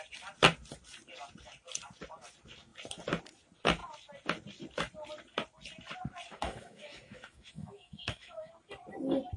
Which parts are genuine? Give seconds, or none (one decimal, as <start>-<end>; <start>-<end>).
0.0-6.3; 8.5-9.4